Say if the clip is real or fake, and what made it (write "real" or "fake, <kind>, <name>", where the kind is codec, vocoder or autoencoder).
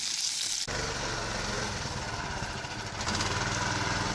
real